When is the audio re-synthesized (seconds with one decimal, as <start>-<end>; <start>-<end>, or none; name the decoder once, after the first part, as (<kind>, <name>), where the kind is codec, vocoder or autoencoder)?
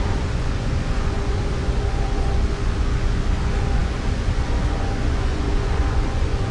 0.0-6.5 (vocoder, Vocos)